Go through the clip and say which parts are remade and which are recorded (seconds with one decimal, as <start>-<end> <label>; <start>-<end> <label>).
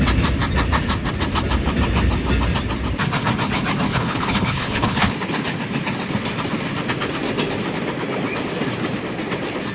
0.0-3.9 recorded; 3.9-5.1 remade; 5.1-9.7 recorded